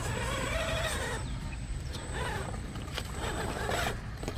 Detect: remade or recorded remade